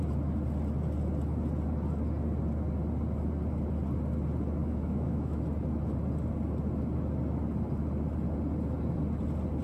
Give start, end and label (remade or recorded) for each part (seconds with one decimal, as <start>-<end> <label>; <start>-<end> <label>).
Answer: 0.0-4.6 recorded; 4.6-5.4 remade; 5.4-9.6 recorded